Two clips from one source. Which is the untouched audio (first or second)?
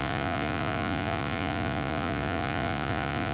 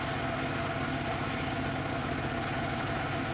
second